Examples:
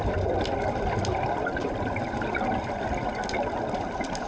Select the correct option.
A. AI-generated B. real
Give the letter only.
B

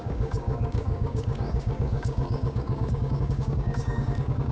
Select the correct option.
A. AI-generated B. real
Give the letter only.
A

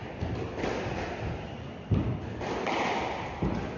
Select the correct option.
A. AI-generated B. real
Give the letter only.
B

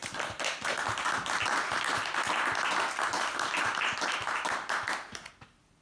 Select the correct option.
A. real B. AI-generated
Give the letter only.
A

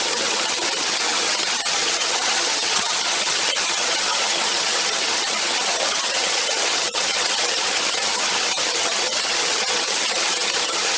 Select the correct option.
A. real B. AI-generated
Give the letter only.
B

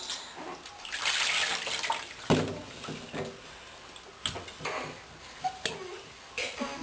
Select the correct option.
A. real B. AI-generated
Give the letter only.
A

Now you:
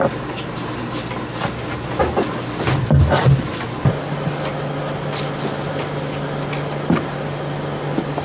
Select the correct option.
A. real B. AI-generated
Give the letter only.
A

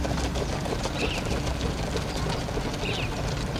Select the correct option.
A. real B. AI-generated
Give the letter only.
A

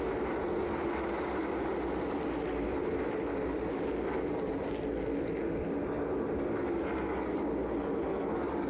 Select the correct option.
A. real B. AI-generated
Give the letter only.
A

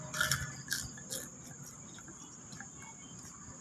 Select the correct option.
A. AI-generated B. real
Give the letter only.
B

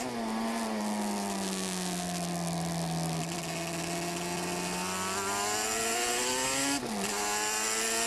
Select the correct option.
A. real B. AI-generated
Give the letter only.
A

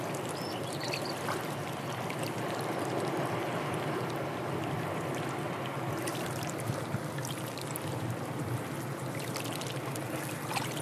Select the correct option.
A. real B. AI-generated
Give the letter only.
A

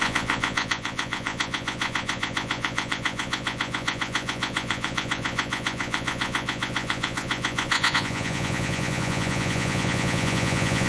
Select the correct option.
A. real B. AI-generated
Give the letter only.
B